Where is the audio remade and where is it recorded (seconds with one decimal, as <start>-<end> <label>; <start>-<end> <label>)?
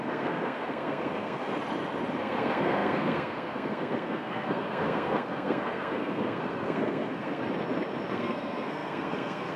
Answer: 0.0-1.5 remade; 1.5-2.2 recorded; 2.2-7.4 remade; 7.4-8.1 recorded; 8.1-9.6 remade